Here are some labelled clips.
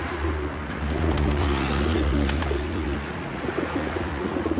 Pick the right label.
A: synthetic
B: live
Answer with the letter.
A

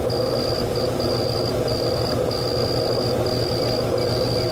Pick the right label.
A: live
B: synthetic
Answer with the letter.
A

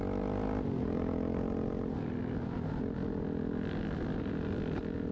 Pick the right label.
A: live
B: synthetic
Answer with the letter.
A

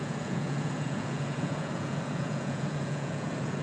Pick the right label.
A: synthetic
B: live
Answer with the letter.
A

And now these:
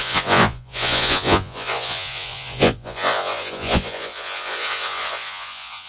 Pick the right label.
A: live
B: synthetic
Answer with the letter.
B